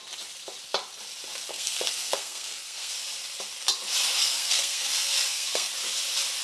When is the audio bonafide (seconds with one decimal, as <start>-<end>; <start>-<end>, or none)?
0.0-1.5; 2.9-4.2; 5.7-6.4